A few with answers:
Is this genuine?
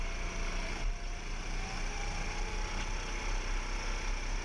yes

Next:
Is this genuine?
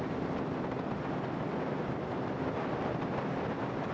yes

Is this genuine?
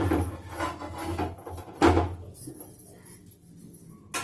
yes